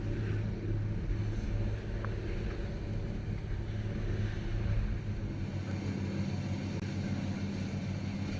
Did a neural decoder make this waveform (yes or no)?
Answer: no